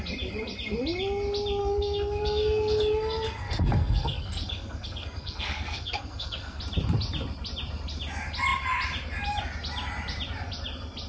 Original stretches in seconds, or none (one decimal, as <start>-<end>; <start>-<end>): 0.0-1.6; 6.6-11.1

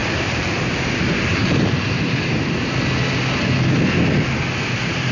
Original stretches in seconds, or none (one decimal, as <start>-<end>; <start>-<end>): 2.8-5.1

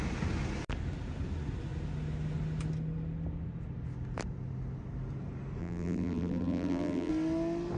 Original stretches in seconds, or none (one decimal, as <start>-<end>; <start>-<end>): 0.0-5.6; 7.1-7.8

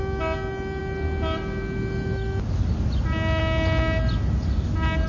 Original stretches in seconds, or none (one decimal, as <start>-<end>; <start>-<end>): 0.0-5.1

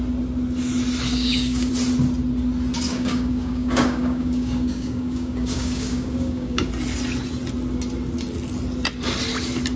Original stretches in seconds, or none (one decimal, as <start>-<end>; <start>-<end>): 0.0-1.1; 1.7-2.9; 6.7-9.8

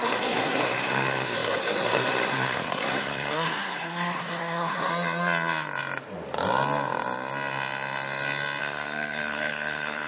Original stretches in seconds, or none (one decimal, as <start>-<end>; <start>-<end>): 4.9-8.6

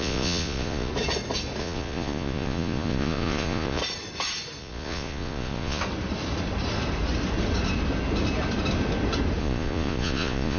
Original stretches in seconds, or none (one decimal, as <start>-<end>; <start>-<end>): 0.9-1.6; 3.8-4.6; 5.8-9.4